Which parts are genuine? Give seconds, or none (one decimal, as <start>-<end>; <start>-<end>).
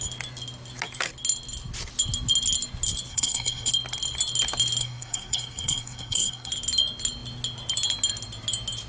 0.0-3.1; 3.7-4.8; 6.5-8.9